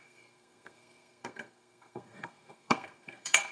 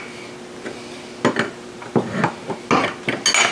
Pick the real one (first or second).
second